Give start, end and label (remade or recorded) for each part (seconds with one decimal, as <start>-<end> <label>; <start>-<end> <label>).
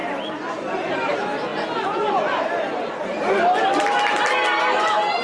0.0-5.2 recorded